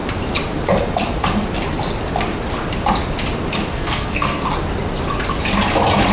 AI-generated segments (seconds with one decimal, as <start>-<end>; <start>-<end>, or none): 3.7-4.4